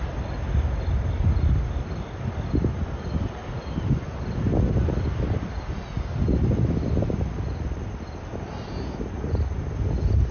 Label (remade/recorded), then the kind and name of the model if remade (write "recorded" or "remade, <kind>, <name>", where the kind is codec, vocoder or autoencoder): recorded